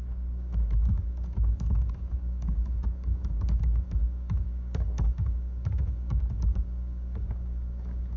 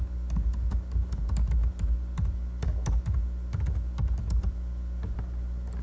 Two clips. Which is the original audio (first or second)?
second